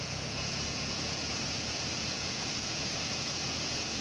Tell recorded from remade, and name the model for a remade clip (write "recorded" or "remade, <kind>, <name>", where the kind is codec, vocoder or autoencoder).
remade, vocoder, Vocos